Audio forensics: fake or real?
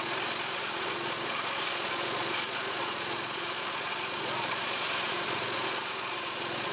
fake